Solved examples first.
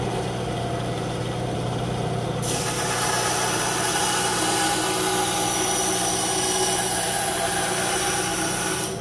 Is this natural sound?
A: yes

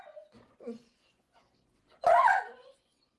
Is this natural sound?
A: no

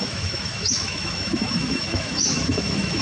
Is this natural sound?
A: no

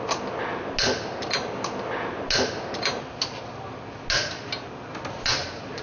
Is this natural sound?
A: yes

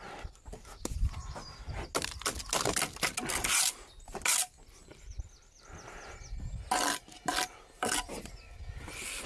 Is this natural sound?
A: yes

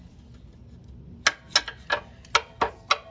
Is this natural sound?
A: yes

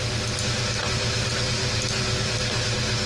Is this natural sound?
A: no